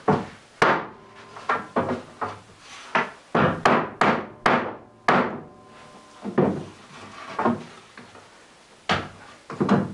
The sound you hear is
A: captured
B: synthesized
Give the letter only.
A